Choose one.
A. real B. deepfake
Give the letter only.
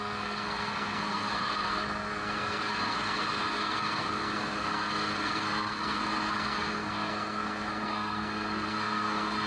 B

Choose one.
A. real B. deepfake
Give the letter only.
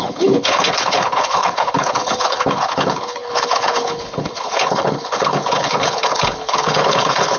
B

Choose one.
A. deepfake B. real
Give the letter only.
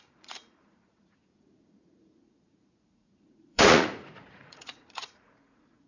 A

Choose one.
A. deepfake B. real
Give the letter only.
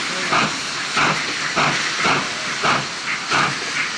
B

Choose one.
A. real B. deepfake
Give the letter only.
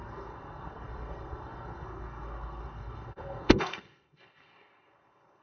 B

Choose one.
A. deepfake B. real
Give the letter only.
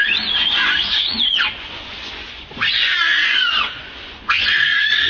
A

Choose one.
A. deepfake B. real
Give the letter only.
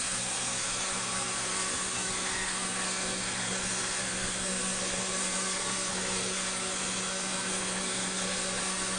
A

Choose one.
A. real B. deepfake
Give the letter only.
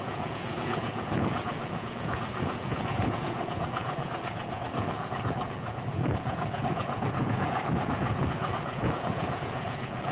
B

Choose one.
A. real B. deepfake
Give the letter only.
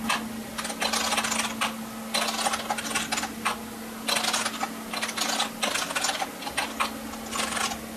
A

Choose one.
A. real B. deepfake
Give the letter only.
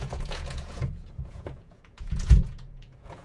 B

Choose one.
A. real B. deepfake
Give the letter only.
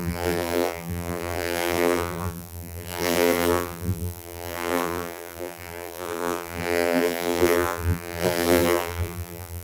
B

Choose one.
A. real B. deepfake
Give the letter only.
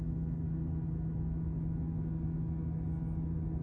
A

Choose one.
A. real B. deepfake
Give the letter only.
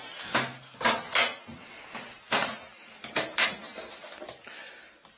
A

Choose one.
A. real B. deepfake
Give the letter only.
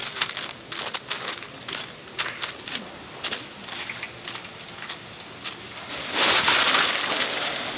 A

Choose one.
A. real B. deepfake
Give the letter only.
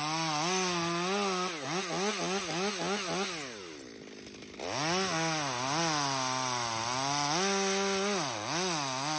A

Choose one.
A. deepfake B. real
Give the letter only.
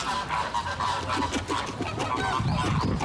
B